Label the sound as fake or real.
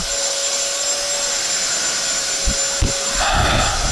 real